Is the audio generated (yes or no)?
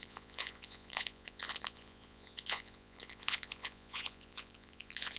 yes